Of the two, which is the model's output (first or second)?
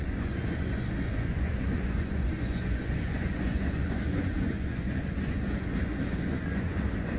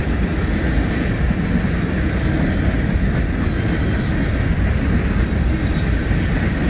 first